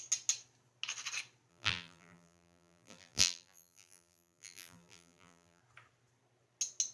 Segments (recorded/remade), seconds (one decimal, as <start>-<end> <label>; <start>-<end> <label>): 0.0-1.5 recorded; 1.5-5.6 remade; 5.6-6.9 recorded